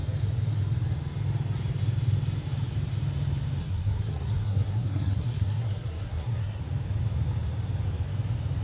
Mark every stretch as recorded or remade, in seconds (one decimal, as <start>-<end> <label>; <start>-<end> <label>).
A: 0.0-3.6 recorded; 3.6-6.6 remade; 6.6-8.6 recorded